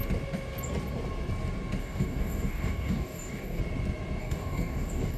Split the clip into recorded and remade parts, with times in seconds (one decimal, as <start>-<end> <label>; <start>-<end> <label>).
0.0-1.8 recorded; 1.8-3.6 remade; 3.6-4.2 recorded; 4.2-5.2 remade